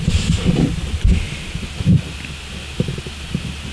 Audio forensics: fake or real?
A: real